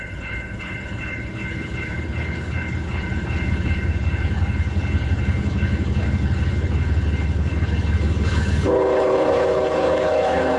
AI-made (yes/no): yes